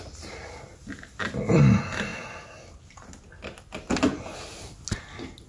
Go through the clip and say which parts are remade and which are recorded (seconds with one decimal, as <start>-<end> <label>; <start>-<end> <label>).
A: 0.0-5.5 recorded